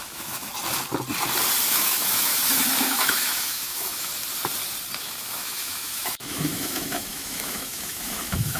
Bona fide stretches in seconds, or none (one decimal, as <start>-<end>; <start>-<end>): 0.5-1.7; 2.3-2.8; 4.1-5.0